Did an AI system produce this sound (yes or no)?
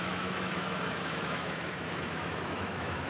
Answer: yes